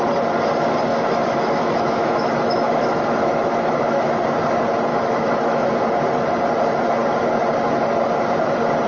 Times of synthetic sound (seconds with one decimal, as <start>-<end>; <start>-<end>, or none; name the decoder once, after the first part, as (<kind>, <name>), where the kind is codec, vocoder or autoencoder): 0.9-4.1 (autoencoder, DAC-VAE); 4.9-5.7